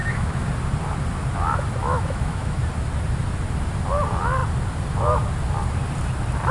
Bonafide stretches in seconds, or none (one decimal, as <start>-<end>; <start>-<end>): 0.5-1.8; 2.6-6.5